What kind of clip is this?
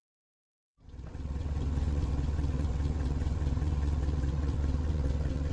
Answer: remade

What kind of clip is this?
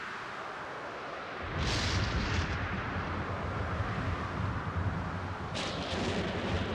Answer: recorded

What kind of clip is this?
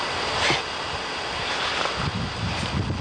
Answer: recorded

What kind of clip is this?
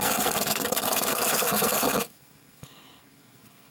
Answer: remade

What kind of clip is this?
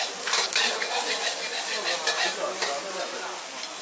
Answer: recorded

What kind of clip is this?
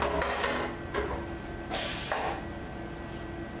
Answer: recorded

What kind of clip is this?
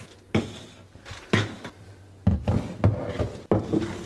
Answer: recorded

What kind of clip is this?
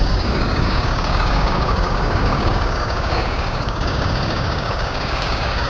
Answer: remade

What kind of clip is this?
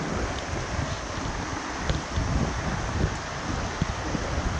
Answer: recorded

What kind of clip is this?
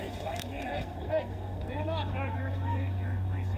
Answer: remade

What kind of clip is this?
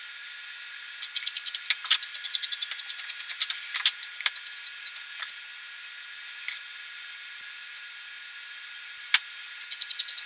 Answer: recorded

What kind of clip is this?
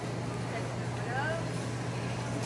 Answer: recorded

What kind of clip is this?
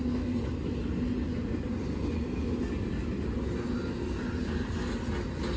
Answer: recorded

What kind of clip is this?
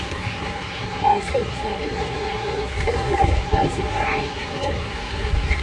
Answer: remade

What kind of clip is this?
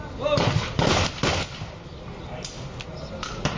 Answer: recorded